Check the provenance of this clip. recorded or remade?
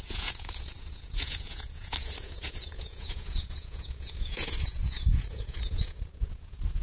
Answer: remade